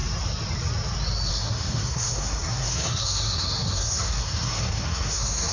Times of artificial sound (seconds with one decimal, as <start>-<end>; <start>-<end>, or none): 1.3-5.5